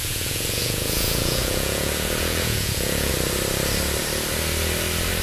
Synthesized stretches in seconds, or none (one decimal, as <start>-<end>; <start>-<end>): 0.0-3.1